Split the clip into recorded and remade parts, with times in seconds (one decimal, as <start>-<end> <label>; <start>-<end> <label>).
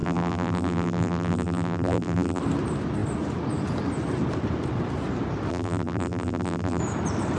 0.0-2.4 remade; 2.4-5.5 recorded; 5.5-6.8 remade; 6.8-7.4 recorded